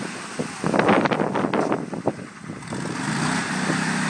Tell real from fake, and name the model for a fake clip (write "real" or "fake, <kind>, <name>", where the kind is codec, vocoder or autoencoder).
real